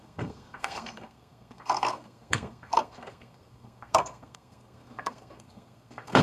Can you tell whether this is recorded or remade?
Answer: remade